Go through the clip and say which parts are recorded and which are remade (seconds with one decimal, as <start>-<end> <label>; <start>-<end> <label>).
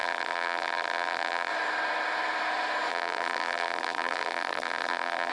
0.0-1.5 remade; 1.5-2.9 recorded; 2.9-5.3 remade